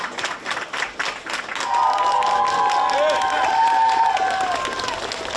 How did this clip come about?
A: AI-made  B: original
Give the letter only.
B